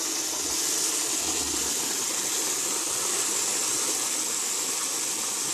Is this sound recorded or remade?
recorded